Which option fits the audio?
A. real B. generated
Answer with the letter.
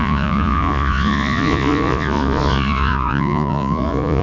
B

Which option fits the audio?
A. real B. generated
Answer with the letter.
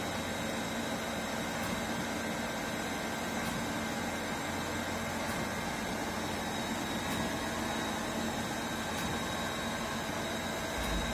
A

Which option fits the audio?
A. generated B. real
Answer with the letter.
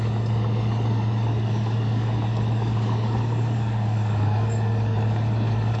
A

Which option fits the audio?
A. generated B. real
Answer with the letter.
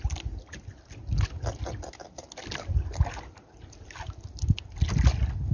B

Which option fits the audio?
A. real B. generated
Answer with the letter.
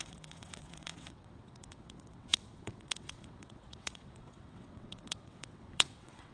B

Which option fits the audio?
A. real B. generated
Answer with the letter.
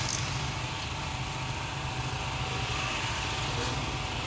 A